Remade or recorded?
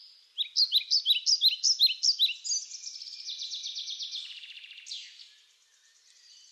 recorded